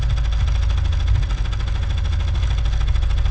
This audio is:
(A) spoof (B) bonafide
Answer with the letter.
B